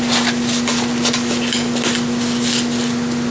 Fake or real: real